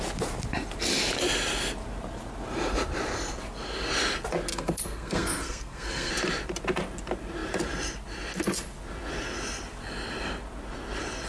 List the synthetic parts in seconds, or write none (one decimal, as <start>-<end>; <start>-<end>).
4.5-6.1